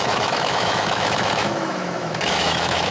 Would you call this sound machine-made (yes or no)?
yes